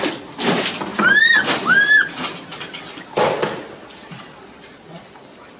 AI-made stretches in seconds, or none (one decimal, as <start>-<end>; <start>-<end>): 0.9-1.7; 2.5-3.2